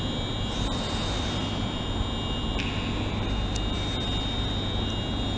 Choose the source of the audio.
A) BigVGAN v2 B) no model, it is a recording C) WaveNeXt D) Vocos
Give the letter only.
B